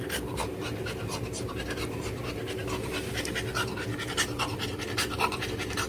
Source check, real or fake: real